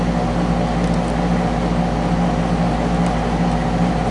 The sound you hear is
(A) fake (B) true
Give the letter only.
B